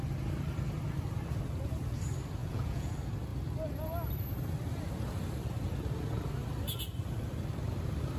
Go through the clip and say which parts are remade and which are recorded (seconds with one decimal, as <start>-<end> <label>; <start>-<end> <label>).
0.0-2.4 recorded; 2.4-2.9 remade; 2.9-8.2 recorded